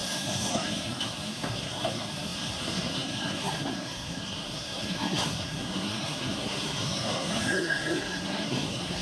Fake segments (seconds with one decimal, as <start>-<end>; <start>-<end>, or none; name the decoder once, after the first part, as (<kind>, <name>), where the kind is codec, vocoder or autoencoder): 0.0-9.0 (codec, SNAC)